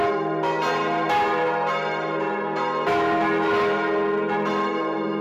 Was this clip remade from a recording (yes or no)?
no